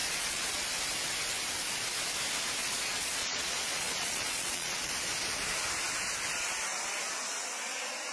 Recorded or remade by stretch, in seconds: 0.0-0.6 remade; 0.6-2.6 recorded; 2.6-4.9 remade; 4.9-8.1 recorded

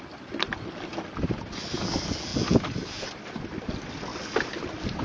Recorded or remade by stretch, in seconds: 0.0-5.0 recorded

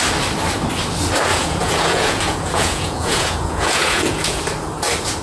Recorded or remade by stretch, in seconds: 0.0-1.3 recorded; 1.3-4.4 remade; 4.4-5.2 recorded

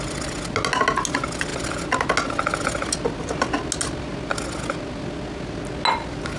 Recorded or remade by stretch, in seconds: 0.0-6.4 recorded

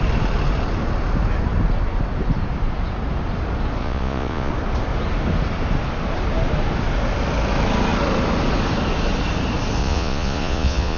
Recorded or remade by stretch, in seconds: 0.0-3.8 recorded; 3.8-4.5 remade; 4.5-9.8 recorded; 9.8-11.0 remade

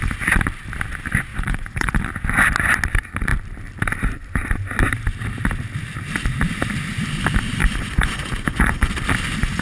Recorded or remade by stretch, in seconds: 0.0-1.3 recorded; 1.3-2.0 remade; 2.0-7.6 recorded; 7.6-8.9 remade; 8.9-9.6 recorded

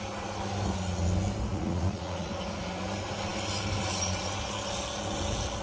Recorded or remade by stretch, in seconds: 0.0-1.5 recorded; 1.5-2.3 remade; 2.3-5.6 recorded